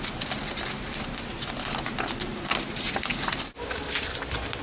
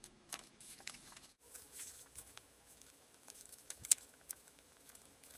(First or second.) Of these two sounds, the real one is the first